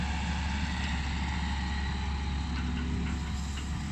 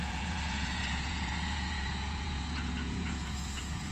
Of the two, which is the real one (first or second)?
first